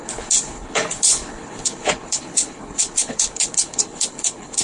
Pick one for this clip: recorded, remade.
remade